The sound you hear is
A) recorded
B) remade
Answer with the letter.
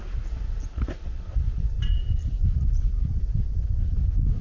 A